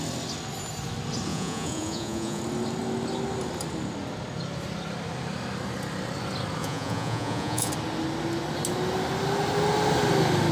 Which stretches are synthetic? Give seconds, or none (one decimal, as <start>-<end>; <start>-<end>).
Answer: 1.3-2.4; 6.6-7.7